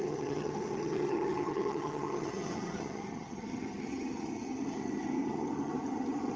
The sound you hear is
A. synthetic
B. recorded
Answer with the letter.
A